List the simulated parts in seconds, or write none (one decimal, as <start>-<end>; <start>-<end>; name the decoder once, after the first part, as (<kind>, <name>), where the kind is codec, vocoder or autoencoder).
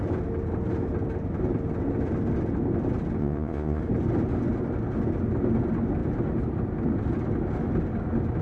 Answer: 3.2-3.8 (vocoder, Vocos)